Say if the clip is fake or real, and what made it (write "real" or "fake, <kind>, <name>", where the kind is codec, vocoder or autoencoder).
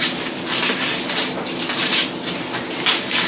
real